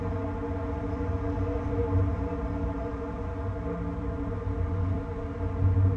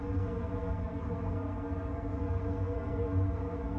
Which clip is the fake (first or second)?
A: second